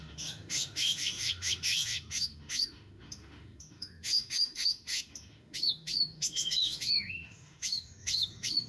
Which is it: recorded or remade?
remade